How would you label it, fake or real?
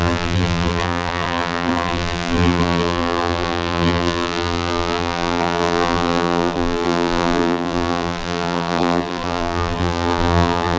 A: fake